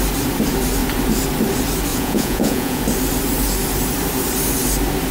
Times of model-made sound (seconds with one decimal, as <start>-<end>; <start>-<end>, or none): 1.9-2.8